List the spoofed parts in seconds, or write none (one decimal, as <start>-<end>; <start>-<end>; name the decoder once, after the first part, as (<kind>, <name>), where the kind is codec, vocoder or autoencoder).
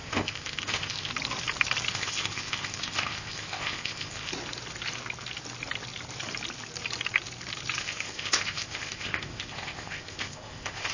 0.0-1.1 (codec, ZipCodec); 1.9-4.3; 7.8-10.9